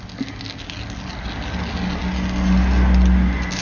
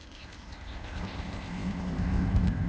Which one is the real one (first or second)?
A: first